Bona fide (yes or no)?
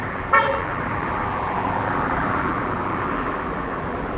no